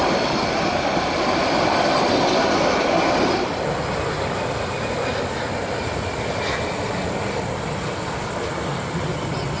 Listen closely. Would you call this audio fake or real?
real